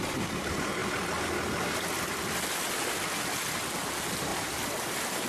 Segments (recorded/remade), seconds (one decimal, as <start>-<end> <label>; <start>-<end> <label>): 0.0-4.3 recorded; 4.3-5.3 remade